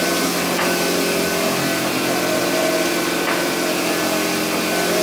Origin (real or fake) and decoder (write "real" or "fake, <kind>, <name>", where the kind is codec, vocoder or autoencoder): real